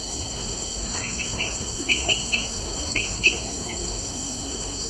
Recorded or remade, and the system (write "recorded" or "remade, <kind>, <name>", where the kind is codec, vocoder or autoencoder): remade, codec, SNAC